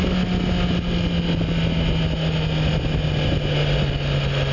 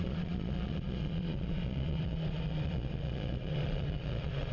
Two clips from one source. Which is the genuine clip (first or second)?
first